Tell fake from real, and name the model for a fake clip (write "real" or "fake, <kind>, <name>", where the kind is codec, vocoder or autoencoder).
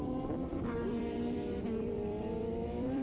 fake, vocoder, BigVGAN v2